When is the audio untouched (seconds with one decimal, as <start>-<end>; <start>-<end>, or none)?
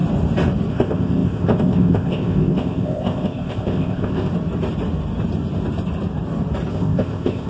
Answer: 0.0-0.7; 4.3-6.7